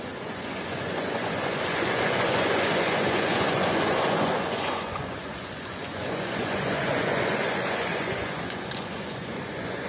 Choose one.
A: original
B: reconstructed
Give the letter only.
B